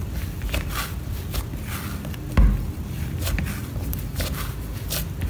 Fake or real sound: real